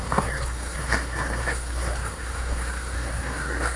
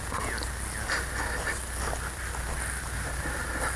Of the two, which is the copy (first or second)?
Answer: first